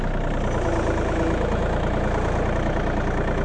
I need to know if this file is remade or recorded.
recorded